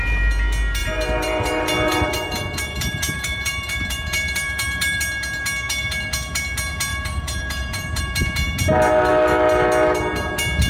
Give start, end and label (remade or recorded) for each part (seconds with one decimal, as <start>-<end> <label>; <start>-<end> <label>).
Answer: 0.0-0.8 recorded; 0.8-5.0 remade; 5.0-6.9 recorded; 6.9-8.0 remade; 8.0-10.7 recorded